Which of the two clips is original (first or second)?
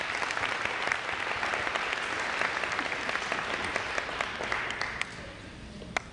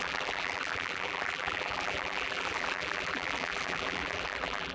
first